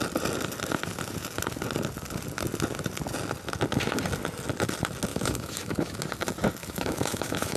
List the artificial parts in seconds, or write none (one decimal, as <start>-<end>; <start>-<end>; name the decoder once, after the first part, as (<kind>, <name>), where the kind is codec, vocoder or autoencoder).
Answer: 5.1-6.0 (autoencoder, DAC-VAE); 6.6-7.6

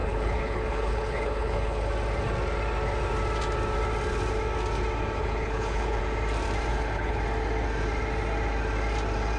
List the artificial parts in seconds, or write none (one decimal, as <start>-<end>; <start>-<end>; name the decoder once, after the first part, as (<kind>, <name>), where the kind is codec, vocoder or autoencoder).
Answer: 0.0-1.9 (codec, HILCodec); 5.2-6.0; 6.7-7.2

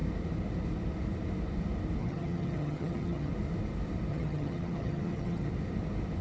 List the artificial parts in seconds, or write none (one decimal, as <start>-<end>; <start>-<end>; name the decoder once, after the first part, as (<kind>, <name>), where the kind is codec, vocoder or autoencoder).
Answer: 2.0-3.3 (vocoder, HiFi-GAN); 4.1-5.5

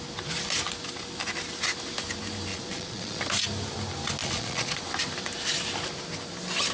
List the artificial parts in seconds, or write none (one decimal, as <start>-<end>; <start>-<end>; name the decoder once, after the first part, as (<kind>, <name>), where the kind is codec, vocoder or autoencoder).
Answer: 2.5-3.2 (vocoder, Vocos); 4.2-4.8

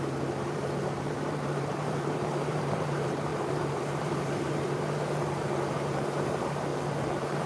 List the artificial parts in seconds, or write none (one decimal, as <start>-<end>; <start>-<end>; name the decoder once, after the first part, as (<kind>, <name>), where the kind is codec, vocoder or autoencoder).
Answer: 0.0-6.7 (vocoder, BigVGAN v2)

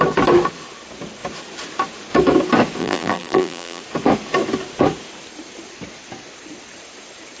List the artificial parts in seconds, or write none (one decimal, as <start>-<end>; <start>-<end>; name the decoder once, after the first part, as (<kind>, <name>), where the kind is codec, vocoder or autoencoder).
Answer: 2.8-3.8 (vocoder, BigVGAN v2)